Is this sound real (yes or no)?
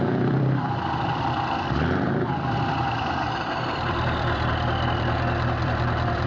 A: no